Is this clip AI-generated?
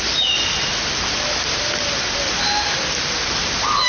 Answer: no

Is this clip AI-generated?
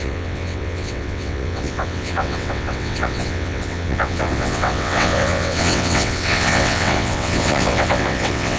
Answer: yes